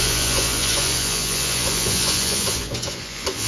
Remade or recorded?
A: remade